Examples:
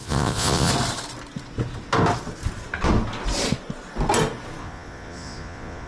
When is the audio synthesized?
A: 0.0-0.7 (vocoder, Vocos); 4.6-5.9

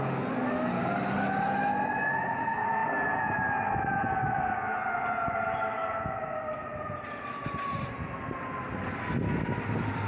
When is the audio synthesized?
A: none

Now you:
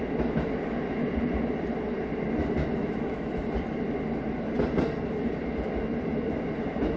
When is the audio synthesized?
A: 2.8-3.4 (autoencoder, DAC-VAE)

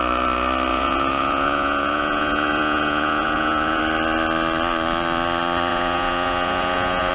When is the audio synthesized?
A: 0.7-3.8 (vocoder, Vocos); 5.7-7.1